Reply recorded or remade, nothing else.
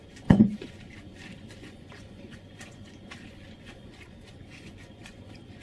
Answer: remade